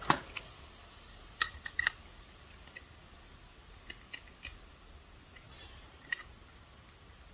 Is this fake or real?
real